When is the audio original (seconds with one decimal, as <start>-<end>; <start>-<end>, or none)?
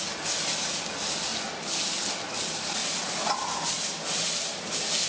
0.0-5.1